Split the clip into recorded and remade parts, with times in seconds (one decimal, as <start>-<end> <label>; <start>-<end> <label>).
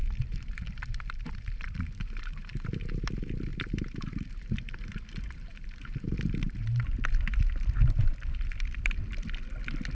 0.0-3.1 remade; 3.1-3.5 recorded; 3.5-6.4 remade; 6.4-9.9 recorded